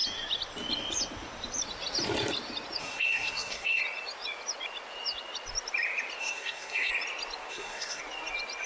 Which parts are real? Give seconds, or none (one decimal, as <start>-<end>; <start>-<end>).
0.0-2.8; 3.8-6.2; 6.9-7.5; 8.0-8.7